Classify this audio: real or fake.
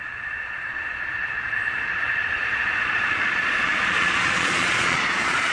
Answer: fake